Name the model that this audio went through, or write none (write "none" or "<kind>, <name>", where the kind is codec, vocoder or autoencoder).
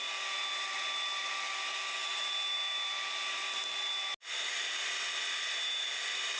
none